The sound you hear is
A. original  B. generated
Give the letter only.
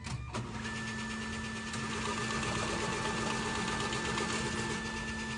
A